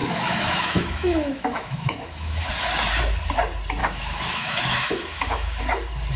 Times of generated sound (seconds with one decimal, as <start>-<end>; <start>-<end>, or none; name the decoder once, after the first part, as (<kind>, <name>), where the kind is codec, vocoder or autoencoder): 0.0-2.5 (autoencoder, DAC-VAE); 3.8-5.6